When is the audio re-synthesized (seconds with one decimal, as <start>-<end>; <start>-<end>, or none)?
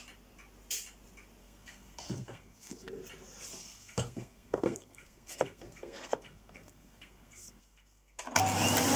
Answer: 1.4-2.9; 3.6-8.2